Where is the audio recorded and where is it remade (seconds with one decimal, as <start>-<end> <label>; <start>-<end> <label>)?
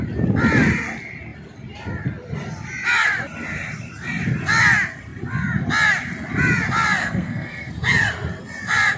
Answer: 0.0-7.0 recorded; 7.0-7.7 remade; 7.7-9.0 recorded